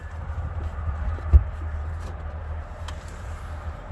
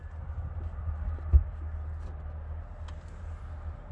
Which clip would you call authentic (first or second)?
second